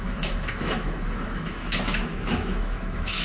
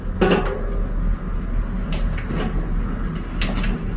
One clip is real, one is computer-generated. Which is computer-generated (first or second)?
first